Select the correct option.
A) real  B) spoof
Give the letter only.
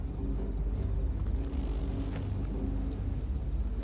A